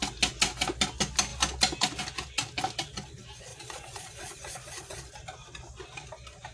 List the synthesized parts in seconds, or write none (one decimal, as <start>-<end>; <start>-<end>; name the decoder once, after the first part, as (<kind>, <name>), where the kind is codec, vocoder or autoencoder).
3.5-5.1 (vocoder, Vocos)

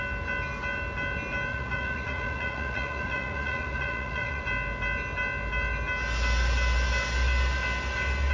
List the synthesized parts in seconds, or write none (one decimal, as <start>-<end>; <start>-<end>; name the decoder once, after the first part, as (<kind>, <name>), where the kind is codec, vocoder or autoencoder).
1.5-4.4 (vocoder, Vocos)

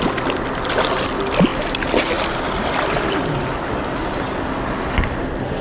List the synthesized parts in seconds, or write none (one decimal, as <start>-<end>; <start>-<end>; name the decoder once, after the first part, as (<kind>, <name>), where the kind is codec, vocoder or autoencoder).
none

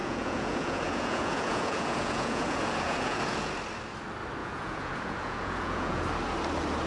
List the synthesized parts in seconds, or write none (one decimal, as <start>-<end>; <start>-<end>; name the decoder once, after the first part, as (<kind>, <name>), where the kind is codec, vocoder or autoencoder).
0.0-3.5 (vocoder, Vocos); 4.4-6.0

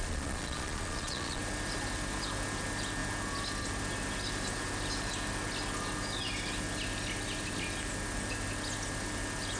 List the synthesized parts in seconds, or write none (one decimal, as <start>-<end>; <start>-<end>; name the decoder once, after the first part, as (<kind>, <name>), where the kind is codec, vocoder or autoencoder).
0.0-1.4 (vocoder, Vocos)

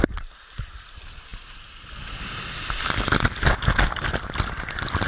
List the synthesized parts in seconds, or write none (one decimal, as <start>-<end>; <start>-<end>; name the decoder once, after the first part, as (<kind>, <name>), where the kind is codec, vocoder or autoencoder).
none

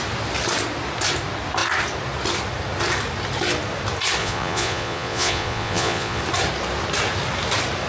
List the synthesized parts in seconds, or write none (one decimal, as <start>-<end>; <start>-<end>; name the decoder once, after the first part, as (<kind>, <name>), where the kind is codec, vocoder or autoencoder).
4.2-6.2 (vocoder, Vocos)

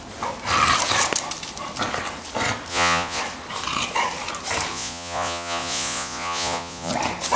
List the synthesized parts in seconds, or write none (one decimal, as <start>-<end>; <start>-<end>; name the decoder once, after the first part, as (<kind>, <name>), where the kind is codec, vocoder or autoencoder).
2.7-3.2 (vocoder, Vocos); 4.7-6.9